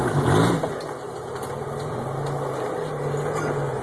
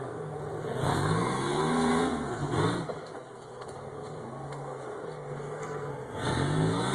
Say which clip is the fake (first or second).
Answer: second